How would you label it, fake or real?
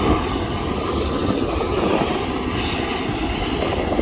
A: real